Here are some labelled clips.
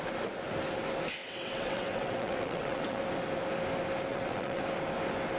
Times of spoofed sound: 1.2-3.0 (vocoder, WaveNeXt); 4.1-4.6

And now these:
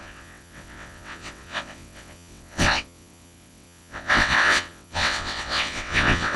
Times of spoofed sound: 0.0-6.4 (vocoder, WaveNeXt)

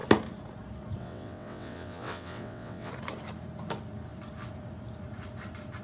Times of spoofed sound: 1.0-2.9 (vocoder, WaveNeXt)

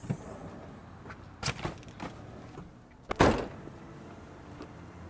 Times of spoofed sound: none

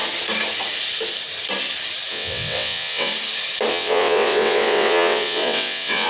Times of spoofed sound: 2.1-3.1 (vocoder, WaveNeXt); 3.7-6.1

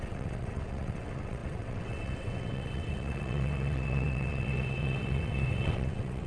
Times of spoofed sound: 0.0-6.3 (vocoder, WaveNeXt)

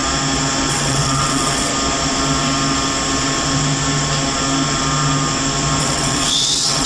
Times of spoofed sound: 0.7-1.7 (vocoder, WaveNeXt); 5.8-6.9

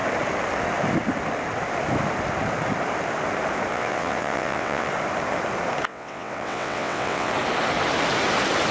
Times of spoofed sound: 3.7-4.9 (vocoder, WaveNeXt); 5.9-7.3